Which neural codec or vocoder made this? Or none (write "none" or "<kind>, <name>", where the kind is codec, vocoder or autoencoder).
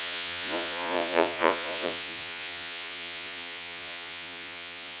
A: vocoder, Vocos